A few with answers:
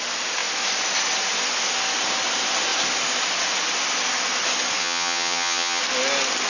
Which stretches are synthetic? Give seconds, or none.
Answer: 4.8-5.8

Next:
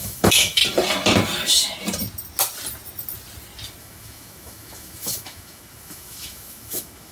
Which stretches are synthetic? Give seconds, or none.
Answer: 0.0-0.6; 3.8-7.1

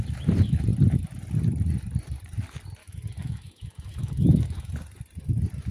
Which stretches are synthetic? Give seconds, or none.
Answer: 2.8-4.7